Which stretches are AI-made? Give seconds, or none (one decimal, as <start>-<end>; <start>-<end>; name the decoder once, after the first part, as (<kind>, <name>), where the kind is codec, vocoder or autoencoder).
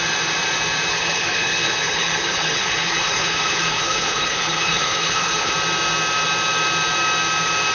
0.9-5.5 (codec, HILCodec)